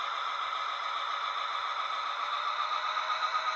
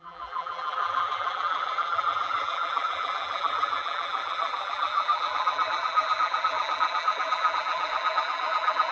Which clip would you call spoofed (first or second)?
second